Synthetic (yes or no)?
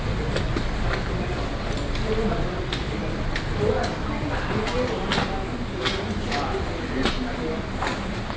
no